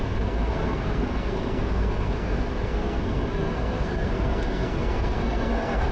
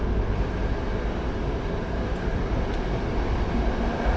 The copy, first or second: first